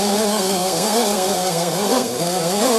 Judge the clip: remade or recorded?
remade